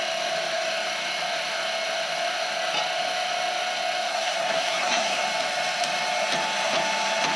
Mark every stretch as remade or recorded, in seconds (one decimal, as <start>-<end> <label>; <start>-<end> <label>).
0.0-4.1 recorded; 4.1-5.2 remade; 5.2-7.4 recorded